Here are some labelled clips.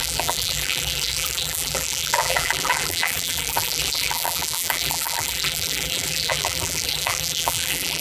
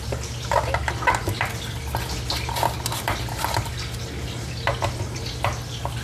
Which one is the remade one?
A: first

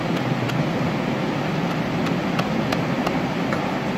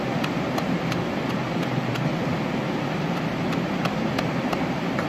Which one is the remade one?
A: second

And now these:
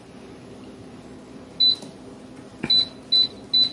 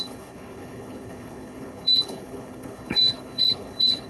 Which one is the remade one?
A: second